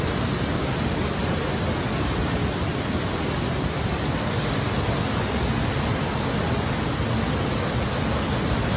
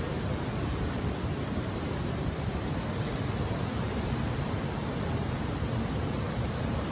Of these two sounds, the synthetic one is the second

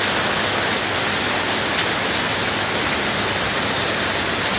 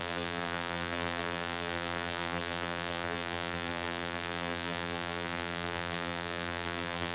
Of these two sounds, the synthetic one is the second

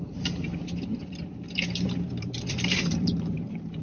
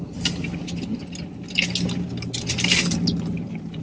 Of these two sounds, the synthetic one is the first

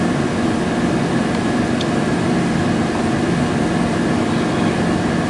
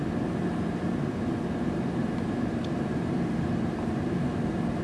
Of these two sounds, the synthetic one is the second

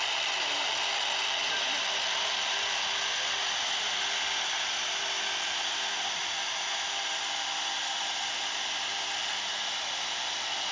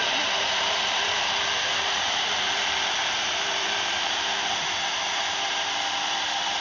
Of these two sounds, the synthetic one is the second